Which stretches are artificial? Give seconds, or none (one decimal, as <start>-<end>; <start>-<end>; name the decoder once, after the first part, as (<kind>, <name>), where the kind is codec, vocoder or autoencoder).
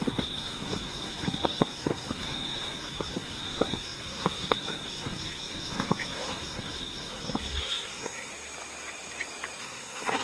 0.0-8.3 (codec, SNAC); 9.6-10.2